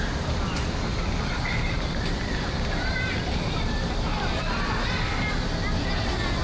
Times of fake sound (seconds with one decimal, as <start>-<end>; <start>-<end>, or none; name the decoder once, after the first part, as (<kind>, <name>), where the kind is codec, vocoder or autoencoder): 0.9-4.7 (vocoder, BigVGAN v2)